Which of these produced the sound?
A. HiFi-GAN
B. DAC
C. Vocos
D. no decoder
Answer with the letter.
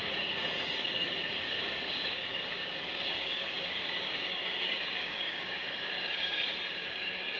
B